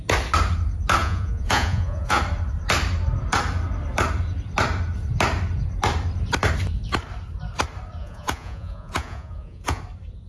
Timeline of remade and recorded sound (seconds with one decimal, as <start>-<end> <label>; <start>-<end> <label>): 0.0-1.0 recorded; 1.0-2.2 remade; 2.2-8.0 recorded; 8.0-9.8 remade; 9.8-10.3 recorded

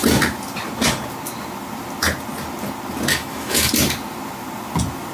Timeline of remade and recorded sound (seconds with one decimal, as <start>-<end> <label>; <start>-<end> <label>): 0.0-3.1 recorded; 3.1-3.7 remade; 3.7-5.1 recorded

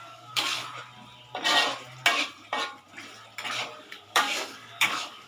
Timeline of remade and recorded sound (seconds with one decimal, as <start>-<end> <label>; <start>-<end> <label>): 0.0-0.6 remade; 0.6-3.8 recorded; 3.8-5.3 remade

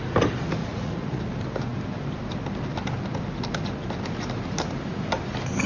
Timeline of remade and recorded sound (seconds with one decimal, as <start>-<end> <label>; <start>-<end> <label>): 0.0-0.6 recorded; 0.6-1.2 remade; 1.2-5.7 recorded

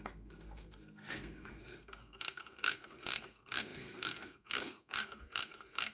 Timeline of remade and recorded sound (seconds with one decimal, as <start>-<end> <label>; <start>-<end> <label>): 0.0-5.9 remade

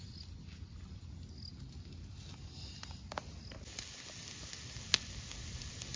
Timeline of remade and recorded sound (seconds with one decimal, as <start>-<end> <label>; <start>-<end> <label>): 0.0-6.0 recorded